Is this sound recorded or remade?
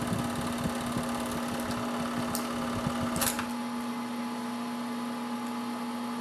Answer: recorded